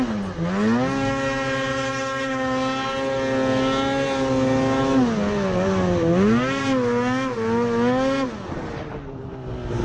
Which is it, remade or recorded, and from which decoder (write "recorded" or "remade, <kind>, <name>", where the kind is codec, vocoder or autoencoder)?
recorded